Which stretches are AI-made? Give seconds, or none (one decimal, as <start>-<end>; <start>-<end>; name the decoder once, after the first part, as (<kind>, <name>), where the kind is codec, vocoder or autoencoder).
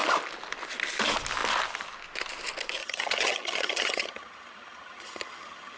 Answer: 2.8-5.8 (vocoder, HiFi-GAN)